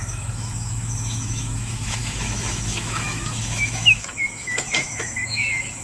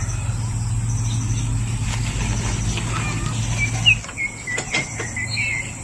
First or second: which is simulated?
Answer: first